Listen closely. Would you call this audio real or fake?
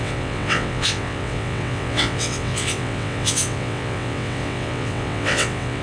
fake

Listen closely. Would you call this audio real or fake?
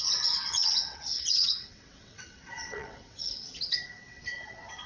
fake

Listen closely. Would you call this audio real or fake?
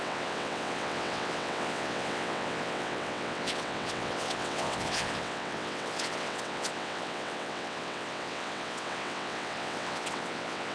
fake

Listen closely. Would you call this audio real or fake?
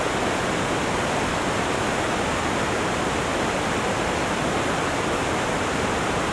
real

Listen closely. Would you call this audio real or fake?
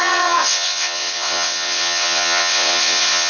fake